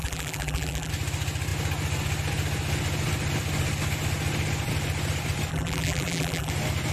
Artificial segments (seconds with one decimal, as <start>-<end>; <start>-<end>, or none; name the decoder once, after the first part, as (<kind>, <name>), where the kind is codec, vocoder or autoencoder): 0.0-0.9 (vocoder, BigVGAN v2); 5.5-6.5